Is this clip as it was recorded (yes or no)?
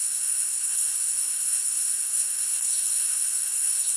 no